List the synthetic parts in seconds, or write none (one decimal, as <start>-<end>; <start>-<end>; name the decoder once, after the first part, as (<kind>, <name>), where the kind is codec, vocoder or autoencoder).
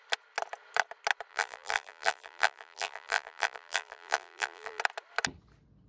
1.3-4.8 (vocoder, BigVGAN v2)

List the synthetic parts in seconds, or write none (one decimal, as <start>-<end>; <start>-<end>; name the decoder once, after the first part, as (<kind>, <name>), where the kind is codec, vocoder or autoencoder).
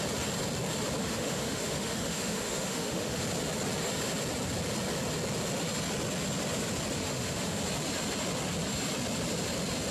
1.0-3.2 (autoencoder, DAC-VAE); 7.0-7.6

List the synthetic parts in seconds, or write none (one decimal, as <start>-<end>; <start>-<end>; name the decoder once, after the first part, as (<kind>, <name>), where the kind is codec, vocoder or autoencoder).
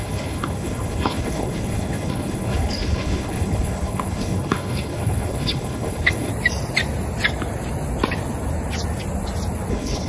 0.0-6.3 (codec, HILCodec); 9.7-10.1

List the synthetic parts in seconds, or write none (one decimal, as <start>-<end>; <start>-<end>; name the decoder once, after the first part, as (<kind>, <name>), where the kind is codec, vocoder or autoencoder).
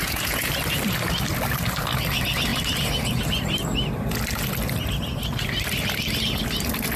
0.0-0.5 (vocoder, Vocos)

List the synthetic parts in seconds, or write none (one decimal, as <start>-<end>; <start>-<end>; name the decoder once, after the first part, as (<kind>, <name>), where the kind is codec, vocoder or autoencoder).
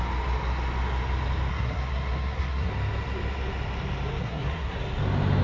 1.5-2.7 (codec, SNAC); 4.2-4.8